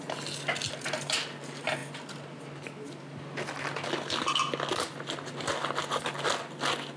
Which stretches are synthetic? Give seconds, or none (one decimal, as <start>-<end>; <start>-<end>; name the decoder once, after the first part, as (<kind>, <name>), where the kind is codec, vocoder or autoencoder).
none